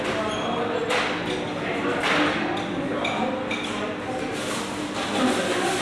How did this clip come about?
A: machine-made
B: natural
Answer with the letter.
B